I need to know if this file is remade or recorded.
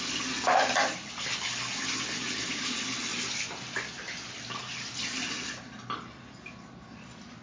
recorded